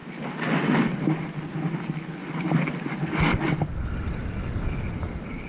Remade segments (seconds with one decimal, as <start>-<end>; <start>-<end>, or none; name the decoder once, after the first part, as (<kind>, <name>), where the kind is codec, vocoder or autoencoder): none